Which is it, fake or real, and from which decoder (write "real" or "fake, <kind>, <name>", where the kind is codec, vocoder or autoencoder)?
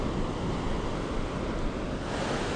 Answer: real